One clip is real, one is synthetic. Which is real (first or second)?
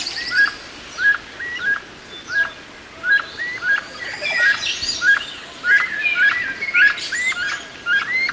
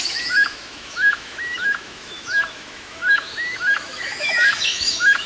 first